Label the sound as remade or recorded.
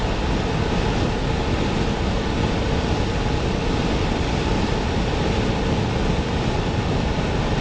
recorded